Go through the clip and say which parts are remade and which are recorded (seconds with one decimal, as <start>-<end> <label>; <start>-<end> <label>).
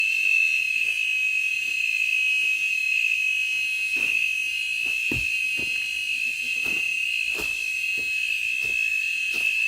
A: 0.0-4.5 recorded; 4.5-7.9 remade; 7.9-8.9 recorded; 8.9-9.7 remade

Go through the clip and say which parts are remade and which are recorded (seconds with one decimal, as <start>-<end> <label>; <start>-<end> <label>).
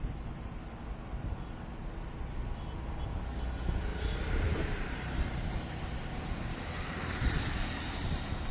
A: 0.0-3.9 recorded; 3.9-8.5 remade